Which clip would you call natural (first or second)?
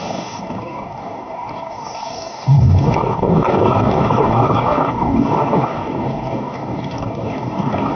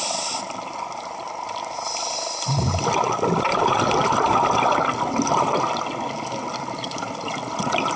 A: second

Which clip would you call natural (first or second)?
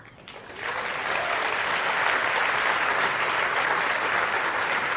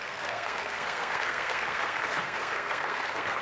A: first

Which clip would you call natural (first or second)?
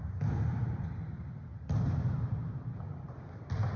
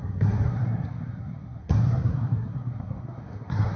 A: first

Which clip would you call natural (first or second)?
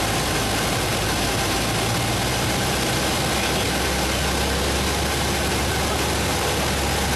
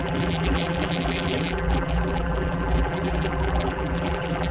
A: first